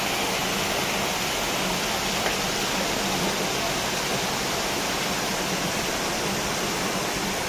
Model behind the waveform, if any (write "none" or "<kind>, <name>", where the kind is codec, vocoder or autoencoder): none